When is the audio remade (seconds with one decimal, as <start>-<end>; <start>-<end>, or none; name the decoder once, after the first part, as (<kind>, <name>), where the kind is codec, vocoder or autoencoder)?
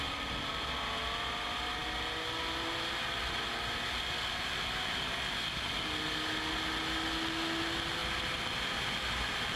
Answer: none